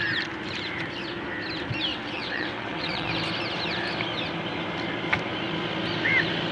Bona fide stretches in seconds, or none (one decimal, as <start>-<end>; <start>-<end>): 0.0-1.9; 3.1-6.5